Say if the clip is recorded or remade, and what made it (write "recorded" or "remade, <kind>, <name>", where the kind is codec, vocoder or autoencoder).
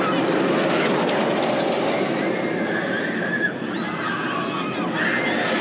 recorded